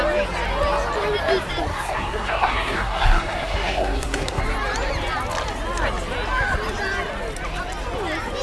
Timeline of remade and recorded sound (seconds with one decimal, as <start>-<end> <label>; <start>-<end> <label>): 0.0-1.7 recorded; 1.7-4.4 remade; 4.4-8.4 recorded